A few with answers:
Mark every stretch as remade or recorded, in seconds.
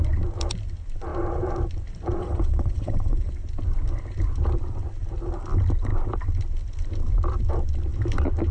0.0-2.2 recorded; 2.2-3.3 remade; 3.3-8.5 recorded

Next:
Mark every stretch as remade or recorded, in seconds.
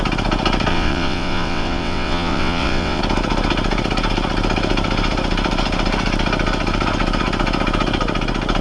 0.0-0.7 recorded; 0.7-3.0 remade; 3.0-8.6 recorded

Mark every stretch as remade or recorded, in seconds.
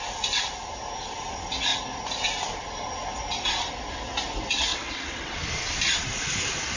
0.0-4.7 recorded; 4.7-5.4 remade; 5.4-6.8 recorded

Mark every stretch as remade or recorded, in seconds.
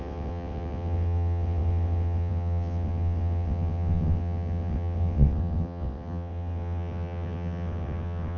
0.0-8.4 remade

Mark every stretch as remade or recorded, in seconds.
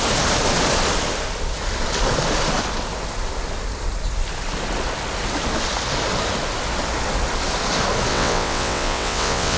0.0-8.1 recorded; 8.1-9.6 remade